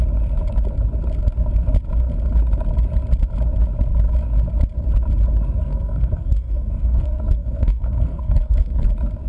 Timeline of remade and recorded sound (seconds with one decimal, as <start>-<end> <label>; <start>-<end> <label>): 0.0-5.6 recorded; 5.6-8.9 remade; 8.9-9.3 recorded